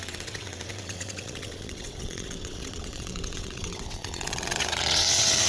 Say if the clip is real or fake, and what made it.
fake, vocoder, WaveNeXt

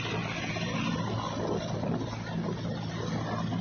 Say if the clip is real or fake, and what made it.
real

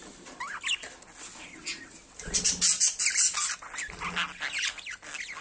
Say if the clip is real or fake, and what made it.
real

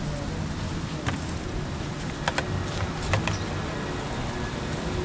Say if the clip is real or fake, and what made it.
real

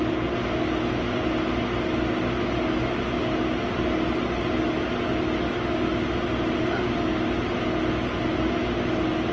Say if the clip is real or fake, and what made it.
real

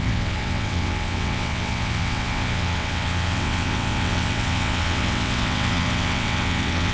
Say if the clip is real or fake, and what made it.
fake, vocoder, WaveNeXt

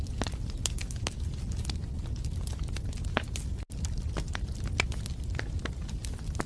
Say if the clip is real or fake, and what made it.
real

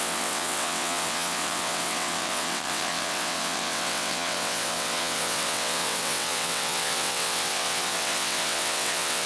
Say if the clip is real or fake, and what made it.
fake, vocoder, WaveNeXt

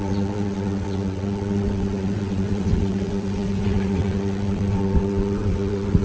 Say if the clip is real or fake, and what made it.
fake, vocoder, WaveNeXt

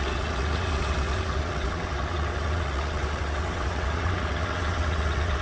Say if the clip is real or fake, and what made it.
fake, vocoder, WaveNeXt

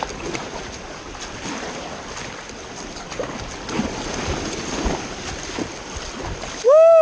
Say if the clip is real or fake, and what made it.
real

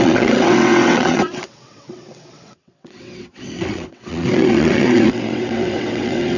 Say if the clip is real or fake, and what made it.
fake, vocoder, WaveNeXt